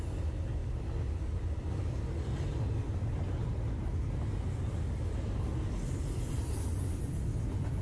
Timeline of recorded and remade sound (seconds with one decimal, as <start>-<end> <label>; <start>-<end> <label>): 0.0-7.8 recorded

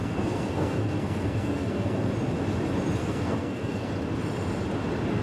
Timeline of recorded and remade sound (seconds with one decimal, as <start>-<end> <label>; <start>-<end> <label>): 0.0-2.1 remade; 2.1-3.0 recorded; 3.0-3.9 remade; 3.9-5.2 recorded